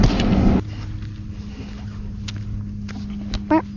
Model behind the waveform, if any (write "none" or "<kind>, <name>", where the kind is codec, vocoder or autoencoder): none